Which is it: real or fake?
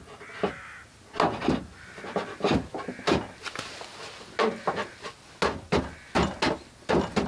real